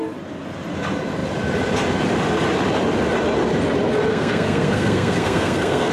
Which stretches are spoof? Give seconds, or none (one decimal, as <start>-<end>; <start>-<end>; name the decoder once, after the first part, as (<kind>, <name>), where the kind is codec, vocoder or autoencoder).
4.1-5.9 (codec, SNAC)